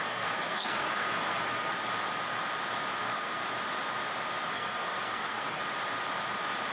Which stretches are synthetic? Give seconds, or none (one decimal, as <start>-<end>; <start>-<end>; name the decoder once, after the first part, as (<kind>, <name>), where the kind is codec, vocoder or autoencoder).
0.0-1.7 (codec, SNAC); 3.0-3.4; 4.5-5.6